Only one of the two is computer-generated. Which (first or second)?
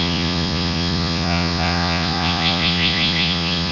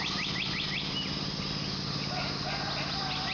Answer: first